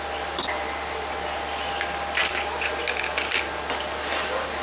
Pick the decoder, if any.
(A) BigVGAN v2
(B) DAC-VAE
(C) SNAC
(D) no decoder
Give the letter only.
D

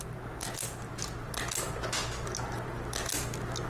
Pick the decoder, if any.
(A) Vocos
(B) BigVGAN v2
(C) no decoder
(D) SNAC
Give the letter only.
C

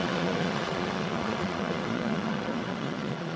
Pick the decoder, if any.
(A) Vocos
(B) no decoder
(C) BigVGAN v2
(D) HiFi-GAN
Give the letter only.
A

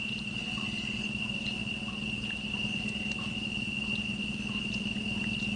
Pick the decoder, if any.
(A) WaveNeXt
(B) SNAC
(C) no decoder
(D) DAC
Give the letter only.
C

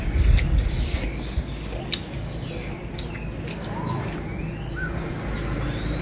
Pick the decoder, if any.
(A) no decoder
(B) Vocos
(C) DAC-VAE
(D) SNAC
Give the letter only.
A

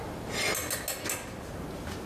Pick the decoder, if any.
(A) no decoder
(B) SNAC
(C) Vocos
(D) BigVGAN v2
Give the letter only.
A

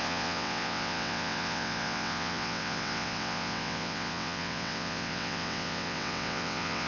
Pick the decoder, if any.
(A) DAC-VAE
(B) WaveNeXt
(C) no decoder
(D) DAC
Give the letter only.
B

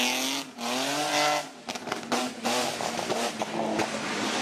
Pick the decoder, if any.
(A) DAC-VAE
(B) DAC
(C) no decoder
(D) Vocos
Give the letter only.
C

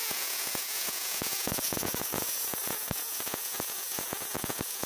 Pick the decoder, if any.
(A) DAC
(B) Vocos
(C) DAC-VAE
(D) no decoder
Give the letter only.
B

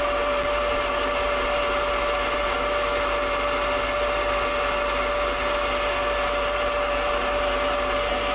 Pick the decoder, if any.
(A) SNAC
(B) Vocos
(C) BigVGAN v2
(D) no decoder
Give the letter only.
D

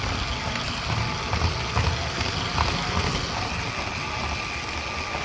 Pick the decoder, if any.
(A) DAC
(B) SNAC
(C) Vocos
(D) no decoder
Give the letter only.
D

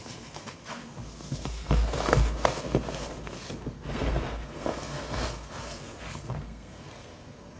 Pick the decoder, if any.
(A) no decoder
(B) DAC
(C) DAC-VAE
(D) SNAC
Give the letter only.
D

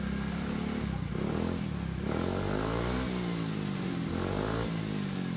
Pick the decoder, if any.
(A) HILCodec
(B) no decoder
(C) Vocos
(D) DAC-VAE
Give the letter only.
B